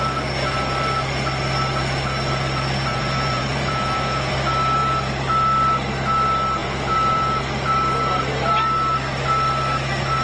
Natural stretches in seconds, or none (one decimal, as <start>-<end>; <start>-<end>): 0.0-2.9; 4.3-6.6; 7.4-10.2